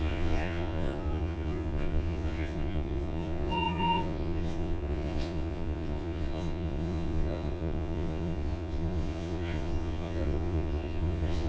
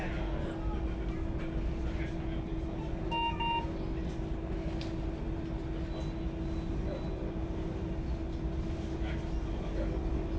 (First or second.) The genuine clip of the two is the second